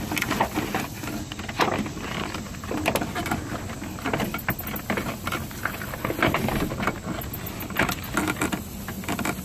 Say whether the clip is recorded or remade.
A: recorded